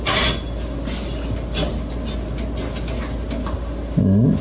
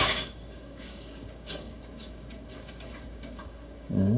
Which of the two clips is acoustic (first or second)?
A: first